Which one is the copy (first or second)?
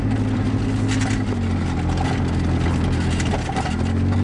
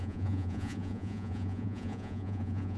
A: second